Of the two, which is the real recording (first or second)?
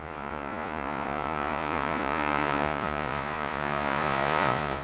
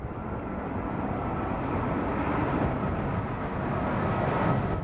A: second